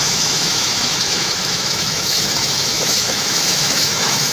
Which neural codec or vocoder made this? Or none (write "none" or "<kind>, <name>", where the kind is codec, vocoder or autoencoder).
autoencoder, DAC-VAE